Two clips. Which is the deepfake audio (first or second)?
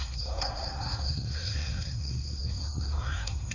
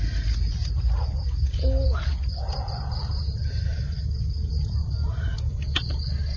first